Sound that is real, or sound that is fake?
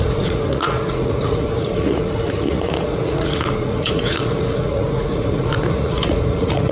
fake